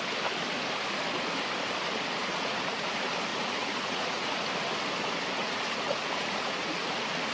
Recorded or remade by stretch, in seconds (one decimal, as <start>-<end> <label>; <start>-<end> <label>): 0.0-2.2 recorded; 2.2-2.9 remade; 2.9-3.3 recorded; 3.3-4.5 remade; 4.5-5.4 recorded; 5.4-7.3 remade